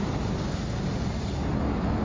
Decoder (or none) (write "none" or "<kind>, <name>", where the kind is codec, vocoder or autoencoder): none